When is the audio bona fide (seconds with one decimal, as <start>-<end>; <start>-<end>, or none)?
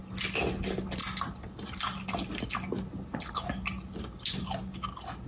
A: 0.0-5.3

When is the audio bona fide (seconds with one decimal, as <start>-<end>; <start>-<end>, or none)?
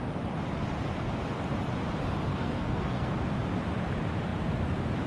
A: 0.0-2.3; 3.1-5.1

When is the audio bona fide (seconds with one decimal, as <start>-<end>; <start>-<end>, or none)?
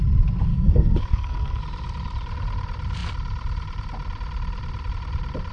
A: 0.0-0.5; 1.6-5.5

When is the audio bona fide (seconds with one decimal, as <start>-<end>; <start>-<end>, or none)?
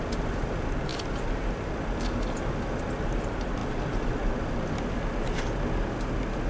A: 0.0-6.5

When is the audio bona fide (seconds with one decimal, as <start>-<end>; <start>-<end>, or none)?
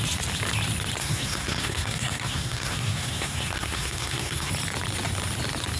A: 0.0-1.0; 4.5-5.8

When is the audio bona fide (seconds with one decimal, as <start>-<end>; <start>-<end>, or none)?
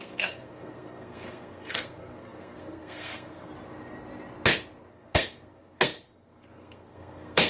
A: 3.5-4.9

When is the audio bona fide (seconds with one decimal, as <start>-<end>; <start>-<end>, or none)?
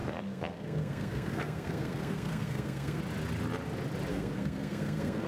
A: 3.0-4.1